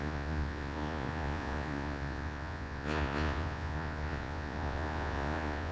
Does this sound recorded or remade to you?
remade